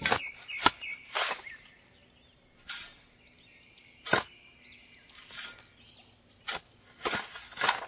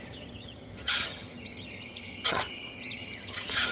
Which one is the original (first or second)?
first